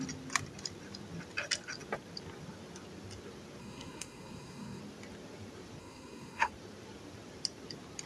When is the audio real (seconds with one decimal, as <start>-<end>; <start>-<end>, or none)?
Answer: 0.0-3.6; 4.8-5.8; 6.5-8.1